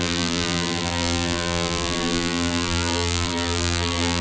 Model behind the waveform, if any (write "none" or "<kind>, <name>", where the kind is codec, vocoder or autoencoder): vocoder, BigVGAN v2